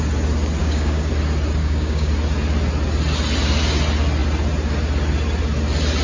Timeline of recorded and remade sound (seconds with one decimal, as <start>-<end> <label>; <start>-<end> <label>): 0.0-0.6 recorded; 0.6-1.1 remade; 1.1-1.6 recorded; 1.6-2.1 remade; 2.1-6.0 recorded